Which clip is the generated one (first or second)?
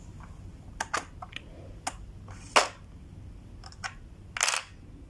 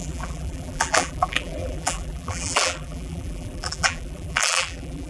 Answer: second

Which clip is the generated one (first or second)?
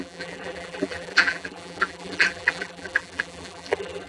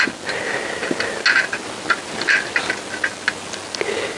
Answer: first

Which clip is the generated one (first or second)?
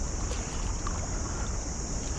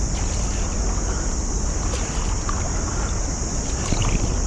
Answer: first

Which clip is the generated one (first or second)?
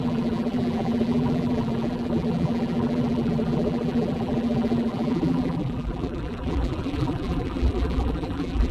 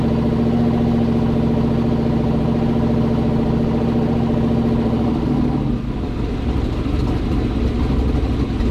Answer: first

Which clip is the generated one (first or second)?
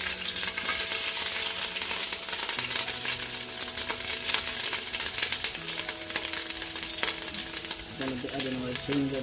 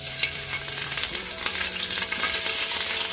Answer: second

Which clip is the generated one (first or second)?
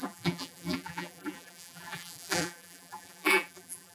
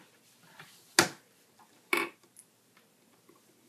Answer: first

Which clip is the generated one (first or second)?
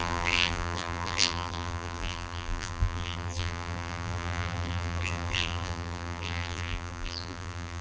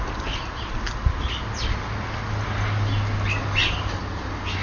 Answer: first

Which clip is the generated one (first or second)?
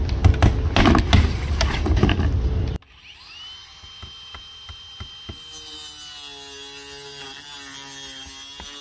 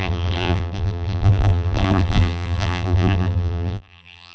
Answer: second